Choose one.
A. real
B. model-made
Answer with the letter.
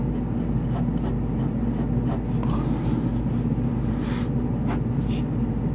A